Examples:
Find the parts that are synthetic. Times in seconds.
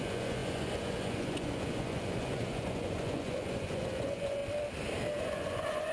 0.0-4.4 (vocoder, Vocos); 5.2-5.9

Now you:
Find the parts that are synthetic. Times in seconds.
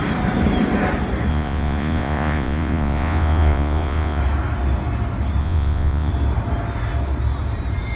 1.3-4.2 (vocoder, Vocos); 5.4-6.1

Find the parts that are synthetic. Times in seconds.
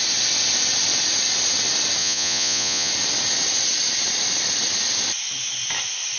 2.0-2.9 (vocoder, Vocos)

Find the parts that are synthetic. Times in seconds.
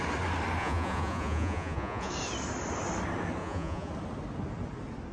0.6-2.1 (vocoder, Vocos); 3.4-3.9